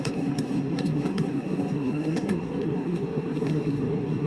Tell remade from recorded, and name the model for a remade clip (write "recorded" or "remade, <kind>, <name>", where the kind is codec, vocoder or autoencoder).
remade, codec, SNAC